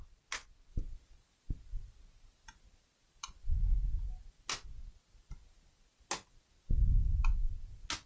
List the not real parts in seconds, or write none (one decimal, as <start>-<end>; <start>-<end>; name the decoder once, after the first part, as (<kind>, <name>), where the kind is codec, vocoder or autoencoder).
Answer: none

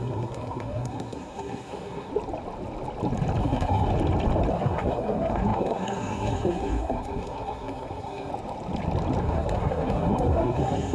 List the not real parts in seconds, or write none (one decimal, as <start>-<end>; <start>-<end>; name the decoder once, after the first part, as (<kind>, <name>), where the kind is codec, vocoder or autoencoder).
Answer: 0.0-2.1 (codec, SNAC); 3.4-3.9; 4.5-8.3; 9.2-10.9

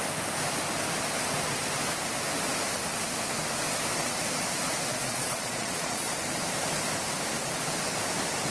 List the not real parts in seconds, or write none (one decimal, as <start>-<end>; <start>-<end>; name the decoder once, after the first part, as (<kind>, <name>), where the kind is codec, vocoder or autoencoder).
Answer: 4.9-6.1 (vocoder, Vocos)

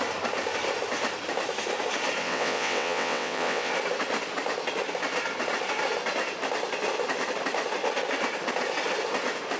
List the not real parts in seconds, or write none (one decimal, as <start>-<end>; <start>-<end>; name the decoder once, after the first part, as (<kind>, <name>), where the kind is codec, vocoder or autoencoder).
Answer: 2.2-3.7 (vocoder, WaveNeXt)

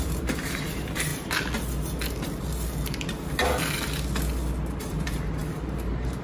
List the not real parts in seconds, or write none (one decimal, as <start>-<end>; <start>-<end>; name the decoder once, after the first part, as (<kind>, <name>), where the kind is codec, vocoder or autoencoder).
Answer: 0.0-1.1 (vocoder, BigVGAN v2); 4.8-6.2

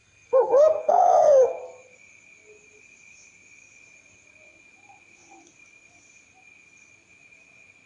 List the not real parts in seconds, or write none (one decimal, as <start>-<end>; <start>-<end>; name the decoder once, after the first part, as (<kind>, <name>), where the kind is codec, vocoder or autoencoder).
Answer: 0.0-1.6 (codec, SNAC)

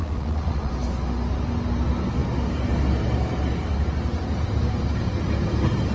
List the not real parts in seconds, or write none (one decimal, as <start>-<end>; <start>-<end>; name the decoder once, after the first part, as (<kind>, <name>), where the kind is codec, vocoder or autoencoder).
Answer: 0.0-0.7 (vocoder, WaveNeXt)

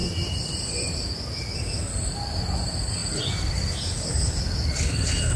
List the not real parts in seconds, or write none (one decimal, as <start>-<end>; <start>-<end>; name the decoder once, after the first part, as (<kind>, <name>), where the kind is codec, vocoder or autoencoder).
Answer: 3.0-4.1 (vocoder, BigVGAN v2)